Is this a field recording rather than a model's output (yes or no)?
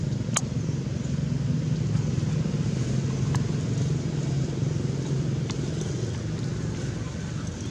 yes